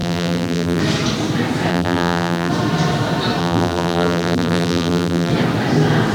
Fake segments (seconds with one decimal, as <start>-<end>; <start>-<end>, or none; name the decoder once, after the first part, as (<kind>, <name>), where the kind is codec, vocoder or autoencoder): 0.0-0.8 (vocoder, BigVGAN v2); 1.7-2.5; 3.4-5.3